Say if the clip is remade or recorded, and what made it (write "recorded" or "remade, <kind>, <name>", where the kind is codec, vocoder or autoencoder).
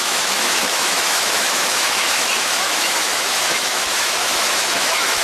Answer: remade, autoencoder, DAC-VAE